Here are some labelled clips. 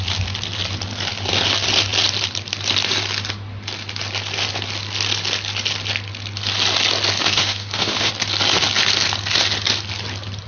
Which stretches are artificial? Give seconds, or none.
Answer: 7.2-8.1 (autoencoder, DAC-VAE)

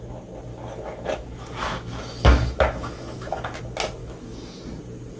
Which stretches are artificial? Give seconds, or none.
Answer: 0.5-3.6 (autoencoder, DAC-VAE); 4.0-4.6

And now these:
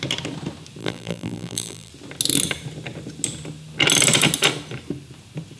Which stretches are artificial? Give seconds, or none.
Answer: 0.8-1.9 (vocoder, BigVGAN v2)